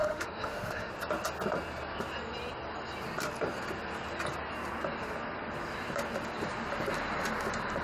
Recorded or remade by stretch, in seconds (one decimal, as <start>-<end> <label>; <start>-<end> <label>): 0.0-0.9 remade; 0.9-7.8 recorded